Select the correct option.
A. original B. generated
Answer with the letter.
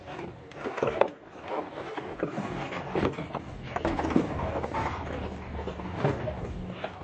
B